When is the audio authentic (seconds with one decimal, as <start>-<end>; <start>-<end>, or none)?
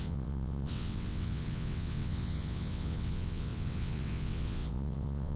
none